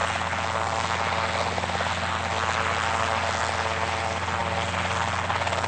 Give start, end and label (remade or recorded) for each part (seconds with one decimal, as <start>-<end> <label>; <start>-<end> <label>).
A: 0.0-5.7 recorded